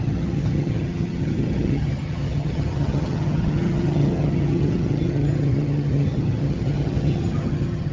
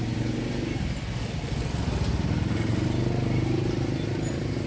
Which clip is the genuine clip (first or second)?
second